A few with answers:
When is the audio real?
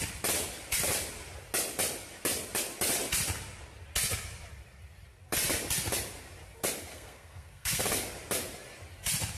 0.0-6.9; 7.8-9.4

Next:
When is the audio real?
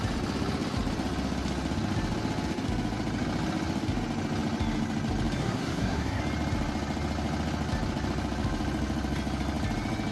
0.0-5.4; 6.2-10.1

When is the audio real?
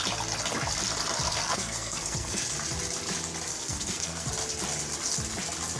0.0-1.3; 2.4-3.5; 4.3-5.8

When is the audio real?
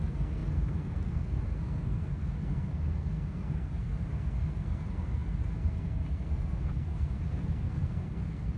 none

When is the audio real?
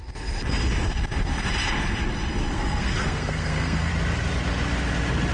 0.0-2.5; 3.9-5.3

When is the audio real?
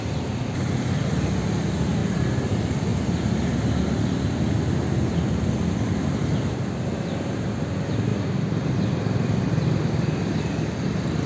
0.0-11.3